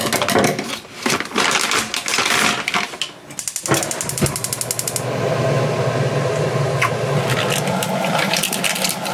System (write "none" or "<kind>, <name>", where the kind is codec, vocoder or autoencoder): none